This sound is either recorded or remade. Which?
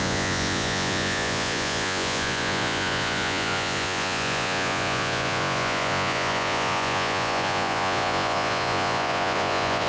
remade